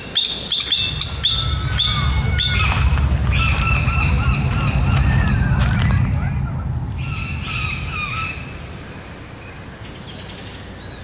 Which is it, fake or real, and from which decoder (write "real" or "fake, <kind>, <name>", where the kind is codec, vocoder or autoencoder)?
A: real